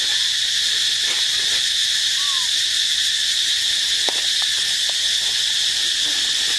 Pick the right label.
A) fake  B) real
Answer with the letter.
B